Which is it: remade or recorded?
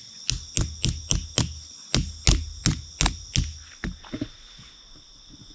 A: recorded